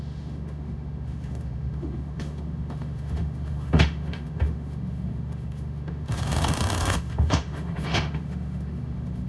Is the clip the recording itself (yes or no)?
no